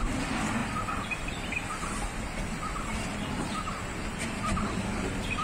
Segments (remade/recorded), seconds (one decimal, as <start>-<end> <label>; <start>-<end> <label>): 0.0-5.4 recorded